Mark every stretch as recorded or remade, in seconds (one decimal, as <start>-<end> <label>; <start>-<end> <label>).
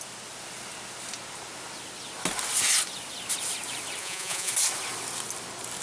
0.0-4.0 recorded; 4.0-4.5 remade; 4.5-5.8 recorded